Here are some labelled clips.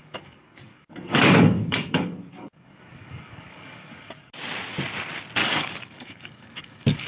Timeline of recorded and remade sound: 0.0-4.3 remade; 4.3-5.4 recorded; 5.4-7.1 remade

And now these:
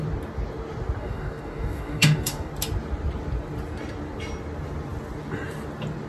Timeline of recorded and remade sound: 0.0-1.0 recorded; 1.0-2.5 remade; 2.5-6.1 recorded

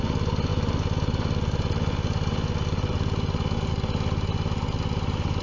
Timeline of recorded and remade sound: 0.0-5.4 recorded